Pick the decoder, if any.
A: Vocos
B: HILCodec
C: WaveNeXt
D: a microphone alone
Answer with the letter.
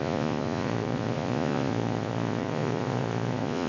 A